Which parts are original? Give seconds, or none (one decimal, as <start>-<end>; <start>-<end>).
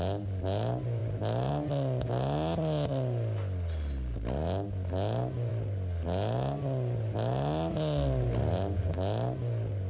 0.0-9.9